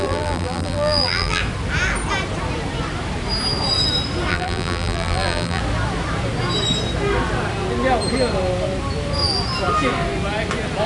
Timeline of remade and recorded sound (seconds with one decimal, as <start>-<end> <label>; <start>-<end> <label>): 0.0-1.4 remade; 1.4-4.3 recorded; 4.3-5.6 remade; 5.6-10.9 recorded